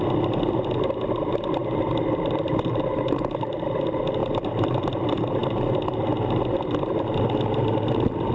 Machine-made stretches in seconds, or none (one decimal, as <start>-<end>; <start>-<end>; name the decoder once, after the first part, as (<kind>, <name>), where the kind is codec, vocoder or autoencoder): 1.6-2.8 (vocoder, BigVGAN v2); 4.2-4.7